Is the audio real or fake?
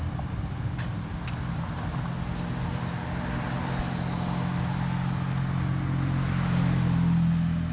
real